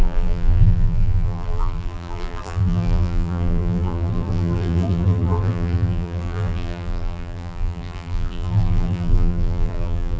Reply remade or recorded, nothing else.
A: remade